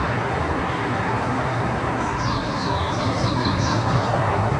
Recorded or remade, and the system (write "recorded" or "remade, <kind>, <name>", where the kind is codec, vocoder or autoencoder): remade, codec, SNAC